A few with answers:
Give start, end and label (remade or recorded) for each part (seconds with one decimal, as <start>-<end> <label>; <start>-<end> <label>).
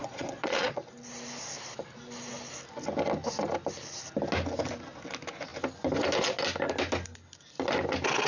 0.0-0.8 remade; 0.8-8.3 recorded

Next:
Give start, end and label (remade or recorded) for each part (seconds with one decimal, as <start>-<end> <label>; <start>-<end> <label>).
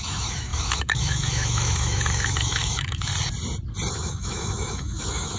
0.0-3.1 remade; 3.1-3.9 recorded; 3.9-5.4 remade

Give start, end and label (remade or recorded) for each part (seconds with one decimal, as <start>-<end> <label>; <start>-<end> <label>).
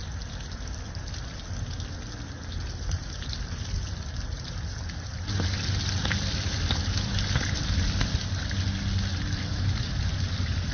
0.0-10.7 recorded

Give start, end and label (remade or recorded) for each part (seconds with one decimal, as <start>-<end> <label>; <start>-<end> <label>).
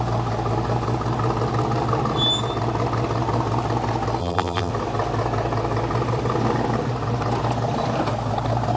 0.0-4.2 recorded; 4.2-4.7 remade; 4.7-8.8 recorded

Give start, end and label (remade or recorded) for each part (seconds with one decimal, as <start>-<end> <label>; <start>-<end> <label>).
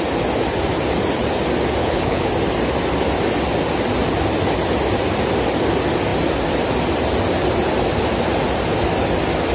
0.0-1.8 recorded; 1.8-2.3 remade; 2.3-9.5 recorded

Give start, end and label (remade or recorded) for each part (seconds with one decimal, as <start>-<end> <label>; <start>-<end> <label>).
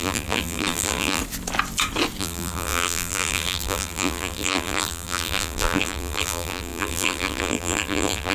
0.0-1.2 remade; 1.2-2.2 recorded; 2.2-8.3 remade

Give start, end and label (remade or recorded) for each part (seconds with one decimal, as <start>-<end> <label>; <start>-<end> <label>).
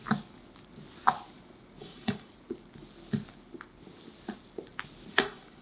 0.0-1.8 recorded; 1.8-2.3 remade; 2.3-5.1 recorded; 5.1-5.6 remade